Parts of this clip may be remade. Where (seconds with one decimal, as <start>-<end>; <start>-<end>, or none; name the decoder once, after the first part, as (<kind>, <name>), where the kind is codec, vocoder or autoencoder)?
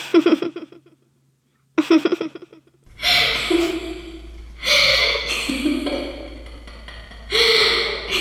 4.9-5.5 (codec, SNAC)